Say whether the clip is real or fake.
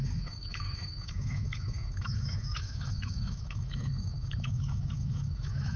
fake